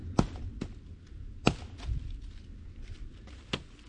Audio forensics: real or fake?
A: real